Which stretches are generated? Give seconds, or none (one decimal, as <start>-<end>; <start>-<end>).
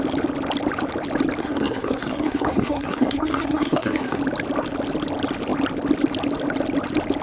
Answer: 1.4-4.2